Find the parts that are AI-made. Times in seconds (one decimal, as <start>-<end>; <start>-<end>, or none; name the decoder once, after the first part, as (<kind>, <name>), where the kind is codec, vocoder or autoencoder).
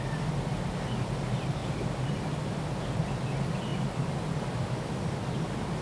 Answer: 1.6-3.1 (vocoder, BigVGAN v2)